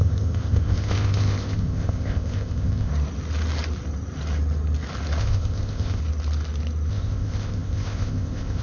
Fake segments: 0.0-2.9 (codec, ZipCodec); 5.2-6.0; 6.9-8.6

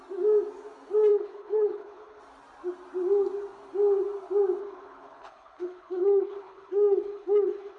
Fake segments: 1.1-2.2 (codec, HILCodec); 4.6-7.8

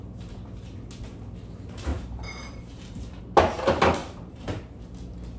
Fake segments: 1.9-3.2 (vocoder, BigVGAN v2); 4.0-4.8

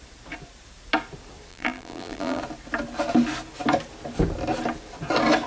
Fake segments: 1.5-2.4 (vocoder, BigVGAN v2)